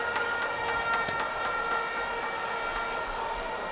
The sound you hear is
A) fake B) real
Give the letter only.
B